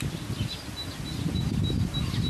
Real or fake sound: real